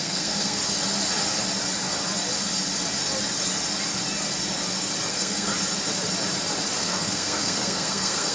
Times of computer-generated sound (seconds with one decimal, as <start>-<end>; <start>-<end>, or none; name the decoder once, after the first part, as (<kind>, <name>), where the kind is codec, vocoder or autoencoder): 0.0-0.6 (codec, SNAC); 5.1-5.5; 6.8-8.3